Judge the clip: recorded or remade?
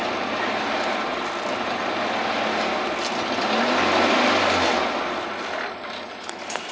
recorded